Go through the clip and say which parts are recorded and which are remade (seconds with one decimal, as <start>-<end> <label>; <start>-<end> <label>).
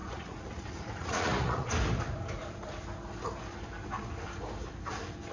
0.0-1.7 remade; 1.7-5.3 recorded